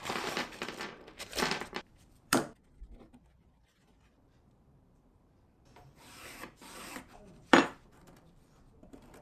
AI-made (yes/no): yes